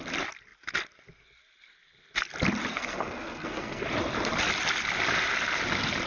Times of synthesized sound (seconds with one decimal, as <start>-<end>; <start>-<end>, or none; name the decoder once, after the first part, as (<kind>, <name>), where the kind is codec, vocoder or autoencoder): 2.7-3.8 (codec, SNAC)